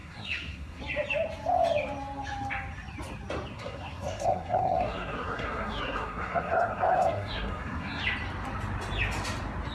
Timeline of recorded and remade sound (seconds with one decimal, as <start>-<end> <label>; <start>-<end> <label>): 0.0-0.8 remade; 0.8-3.5 recorded; 3.5-8.0 remade; 8.0-9.7 recorded

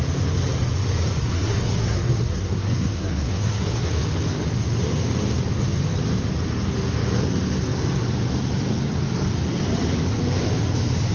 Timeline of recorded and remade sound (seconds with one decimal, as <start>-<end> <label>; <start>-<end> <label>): 0.0-1.2 recorded; 1.2-3.9 remade; 3.9-11.1 recorded

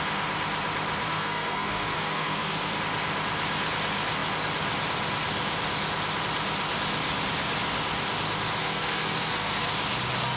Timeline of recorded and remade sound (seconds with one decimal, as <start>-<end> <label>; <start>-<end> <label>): 0.0-1.0 recorded; 1.0-2.8 remade; 2.8-8.6 recorded; 8.6-9.7 remade; 9.7-10.4 recorded

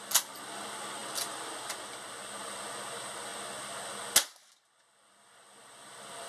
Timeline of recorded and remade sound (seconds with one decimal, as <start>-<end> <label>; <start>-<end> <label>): 0.0-6.3 recorded

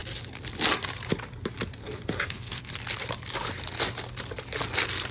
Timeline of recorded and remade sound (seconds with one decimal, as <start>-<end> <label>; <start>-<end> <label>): 0.0-1.8 recorded; 1.8-2.7 remade; 2.7-5.1 recorded

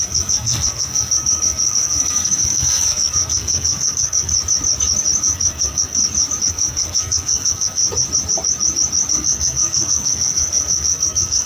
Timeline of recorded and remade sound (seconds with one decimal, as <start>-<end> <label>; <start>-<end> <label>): 0.0-4.3 remade; 4.3-5.2 recorded; 5.2-6.0 remade; 6.0-6.5 recorded; 6.5-7.8 remade; 7.8-9.1 recorded; 9.1-11.5 remade